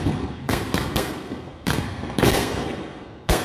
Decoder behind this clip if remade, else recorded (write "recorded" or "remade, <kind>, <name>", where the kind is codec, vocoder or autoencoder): remade, codec, SNAC